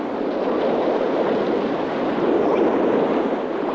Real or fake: real